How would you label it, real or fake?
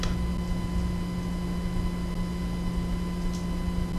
real